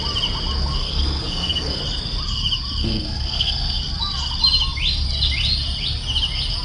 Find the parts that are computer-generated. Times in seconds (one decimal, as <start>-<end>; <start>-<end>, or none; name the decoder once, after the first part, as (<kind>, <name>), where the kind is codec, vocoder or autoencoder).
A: 0.8-1.8 (codec, SNAC); 2.8-3.8